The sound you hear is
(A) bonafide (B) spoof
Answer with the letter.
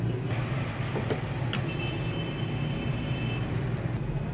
A